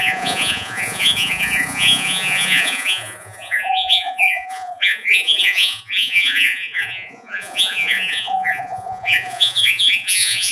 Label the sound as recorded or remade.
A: remade